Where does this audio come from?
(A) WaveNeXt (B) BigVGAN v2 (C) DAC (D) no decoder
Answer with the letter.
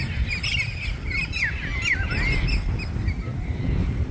D